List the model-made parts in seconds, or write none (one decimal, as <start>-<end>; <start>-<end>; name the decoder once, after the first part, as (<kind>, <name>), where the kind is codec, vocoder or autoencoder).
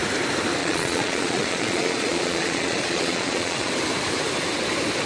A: 0.6-3.7 (vocoder, Vocos)